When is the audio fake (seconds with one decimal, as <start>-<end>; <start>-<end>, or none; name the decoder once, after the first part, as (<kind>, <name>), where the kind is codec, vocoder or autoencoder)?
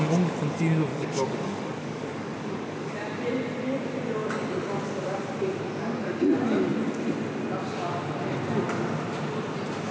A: 0.9-2.9 (codec, DAC)